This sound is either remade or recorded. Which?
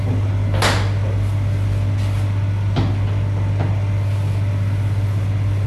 recorded